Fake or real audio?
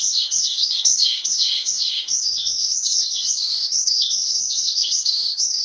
fake